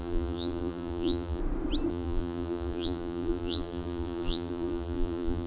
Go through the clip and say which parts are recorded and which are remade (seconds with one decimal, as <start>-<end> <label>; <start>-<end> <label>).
0.0-1.4 remade; 1.4-1.9 recorded; 1.9-5.5 remade